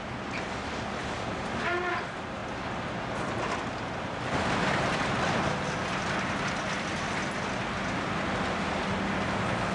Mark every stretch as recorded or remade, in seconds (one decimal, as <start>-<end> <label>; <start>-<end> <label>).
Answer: 0.0-9.7 recorded

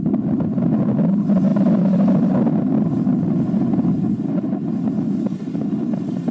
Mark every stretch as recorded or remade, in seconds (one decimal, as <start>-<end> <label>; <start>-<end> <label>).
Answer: 0.0-6.3 recorded

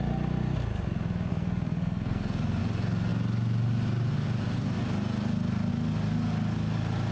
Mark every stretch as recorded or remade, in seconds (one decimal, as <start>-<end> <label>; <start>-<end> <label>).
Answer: 0.0-1.3 recorded; 1.3-2.6 remade; 2.6-7.1 recorded

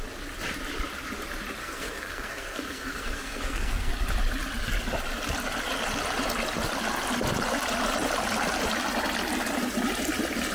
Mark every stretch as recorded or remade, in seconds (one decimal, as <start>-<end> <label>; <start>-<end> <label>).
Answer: 0.0-1.6 recorded; 1.6-3.9 remade; 3.9-10.5 recorded

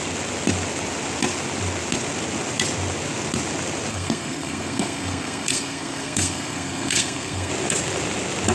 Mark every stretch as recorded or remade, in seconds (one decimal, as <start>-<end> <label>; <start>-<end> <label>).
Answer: 0.0-3.9 recorded; 3.9-7.5 remade; 7.5-8.5 recorded

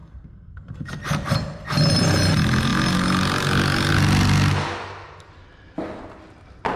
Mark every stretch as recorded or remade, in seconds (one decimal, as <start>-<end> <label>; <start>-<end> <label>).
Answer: 0.0-1.0 remade; 1.0-6.8 recorded

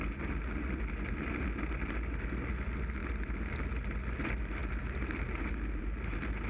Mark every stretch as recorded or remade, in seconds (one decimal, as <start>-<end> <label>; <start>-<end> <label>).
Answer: 0.0-6.5 recorded